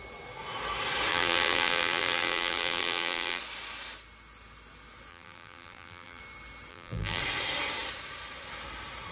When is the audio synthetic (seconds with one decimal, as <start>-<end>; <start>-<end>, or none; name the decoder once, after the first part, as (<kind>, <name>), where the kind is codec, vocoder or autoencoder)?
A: 1.1-3.4 (vocoder, BigVGAN v2); 5.1-6.2; 6.7-7.2